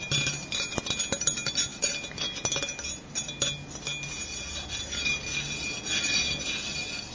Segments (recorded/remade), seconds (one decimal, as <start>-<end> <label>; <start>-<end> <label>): 0.0-7.1 recorded